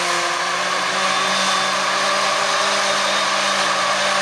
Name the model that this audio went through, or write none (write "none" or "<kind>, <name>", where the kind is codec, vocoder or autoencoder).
none